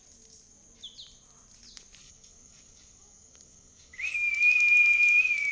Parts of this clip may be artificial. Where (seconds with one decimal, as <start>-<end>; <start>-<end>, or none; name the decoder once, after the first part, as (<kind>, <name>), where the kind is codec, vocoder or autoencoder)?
2.0-4.3 (codec, DAC)